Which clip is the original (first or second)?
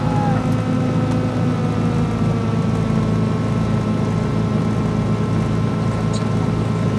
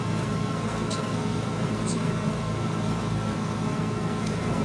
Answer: first